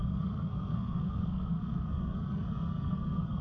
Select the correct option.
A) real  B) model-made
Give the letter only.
B